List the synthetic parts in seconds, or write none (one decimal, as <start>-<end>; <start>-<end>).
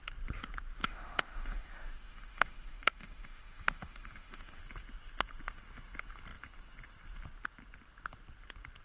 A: 0.8-4.6